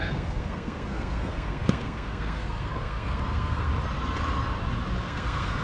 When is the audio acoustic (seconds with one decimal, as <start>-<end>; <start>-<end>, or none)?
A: 3.7-5.0